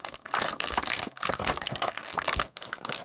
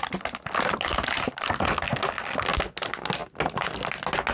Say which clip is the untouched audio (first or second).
second